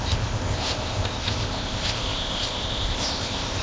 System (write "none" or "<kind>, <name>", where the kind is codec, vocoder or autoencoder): codec, ZipCodec